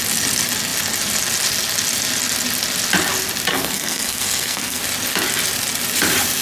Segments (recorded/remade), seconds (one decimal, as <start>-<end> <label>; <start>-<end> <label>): 0.0-3.5 recorded; 3.5-4.8 remade; 4.8-6.4 recorded